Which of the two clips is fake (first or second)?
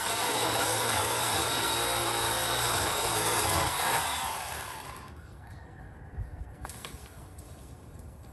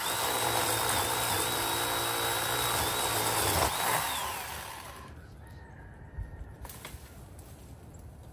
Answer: first